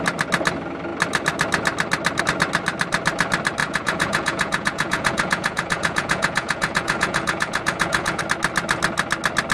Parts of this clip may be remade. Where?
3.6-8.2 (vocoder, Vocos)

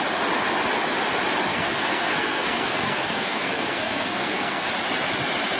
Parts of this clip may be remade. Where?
1.5-4.7 (codec, SNAC)